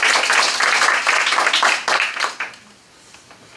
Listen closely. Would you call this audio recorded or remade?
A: recorded